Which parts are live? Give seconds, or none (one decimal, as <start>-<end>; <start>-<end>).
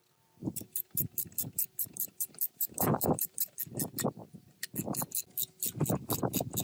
0.0-0.4; 3.6-6.6